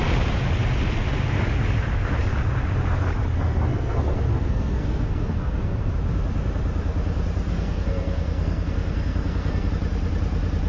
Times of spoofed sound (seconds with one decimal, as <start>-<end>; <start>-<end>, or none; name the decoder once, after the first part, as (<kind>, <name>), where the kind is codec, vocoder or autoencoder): 3.3-5.9 (codec, SNAC); 7.5-9.7